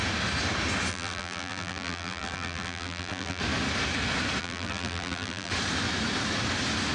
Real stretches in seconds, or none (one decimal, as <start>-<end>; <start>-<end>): 0.0-0.9; 3.4-4.4; 5.5-6.9